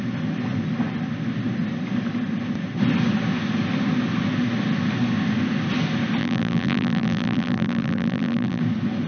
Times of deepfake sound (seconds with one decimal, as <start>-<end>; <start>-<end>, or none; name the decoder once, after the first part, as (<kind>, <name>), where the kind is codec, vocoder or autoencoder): 6.2-8.6 (vocoder, BigVGAN v2)